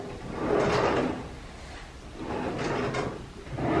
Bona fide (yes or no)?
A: yes